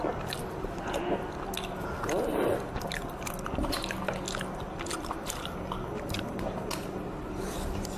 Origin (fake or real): real